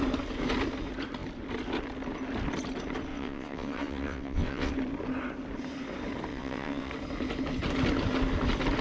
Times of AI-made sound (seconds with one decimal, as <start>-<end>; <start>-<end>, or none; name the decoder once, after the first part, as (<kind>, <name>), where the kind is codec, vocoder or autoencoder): 3.1-4.7 (vocoder, WaveNeXt); 6.3-6.9